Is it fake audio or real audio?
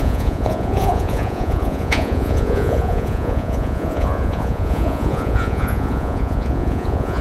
fake